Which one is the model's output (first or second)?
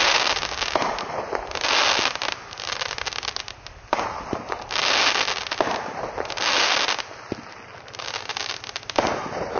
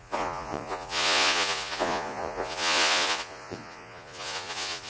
second